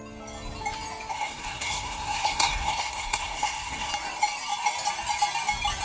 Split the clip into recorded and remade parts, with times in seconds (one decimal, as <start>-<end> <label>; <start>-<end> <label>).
0.0-1.1 recorded; 1.1-3.9 remade; 3.9-5.8 recorded